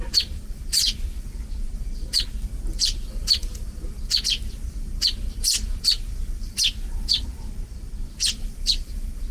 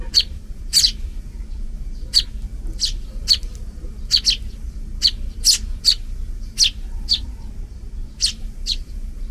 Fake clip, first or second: first